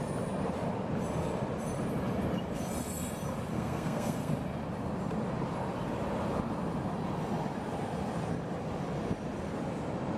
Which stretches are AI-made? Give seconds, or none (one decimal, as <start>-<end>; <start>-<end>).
3.5-4.3